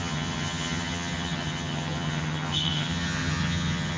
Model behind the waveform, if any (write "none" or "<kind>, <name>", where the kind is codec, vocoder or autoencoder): vocoder, HiFi-GAN